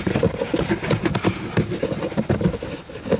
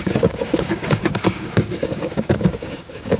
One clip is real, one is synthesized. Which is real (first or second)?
first